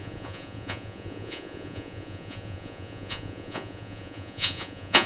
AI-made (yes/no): yes